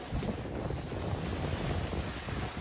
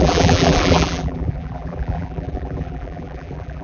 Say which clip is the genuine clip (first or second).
first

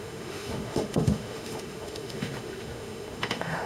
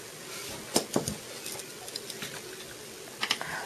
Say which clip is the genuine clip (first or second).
second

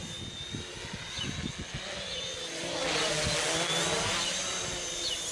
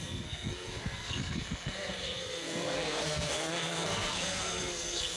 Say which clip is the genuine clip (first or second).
first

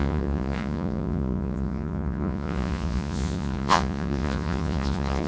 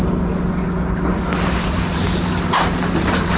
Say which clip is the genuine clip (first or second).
second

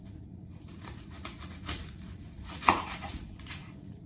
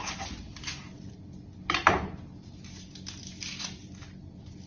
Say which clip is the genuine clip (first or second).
second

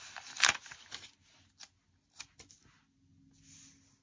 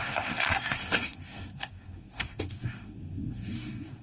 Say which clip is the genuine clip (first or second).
first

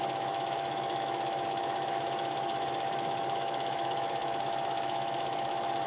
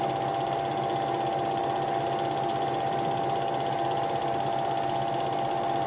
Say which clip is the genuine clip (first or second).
second